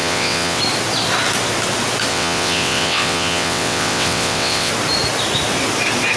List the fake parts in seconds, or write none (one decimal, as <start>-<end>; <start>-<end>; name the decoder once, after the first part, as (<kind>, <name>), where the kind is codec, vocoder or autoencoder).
0.0-0.6 (vocoder, WaveNeXt); 2.1-4.7